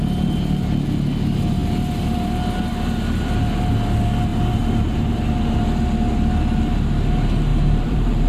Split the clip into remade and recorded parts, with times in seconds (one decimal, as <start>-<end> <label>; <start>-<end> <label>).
0.0-4.3 recorded; 4.3-5.2 remade; 5.2-7.5 recorded; 7.5-8.3 remade